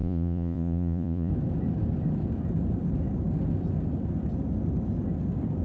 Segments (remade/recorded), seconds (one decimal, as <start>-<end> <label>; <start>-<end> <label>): 0.0-1.3 remade; 1.3-5.6 recorded